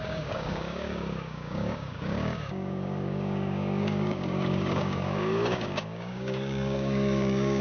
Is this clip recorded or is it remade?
remade